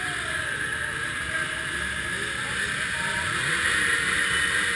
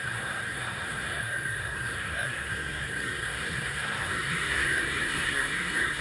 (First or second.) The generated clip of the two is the second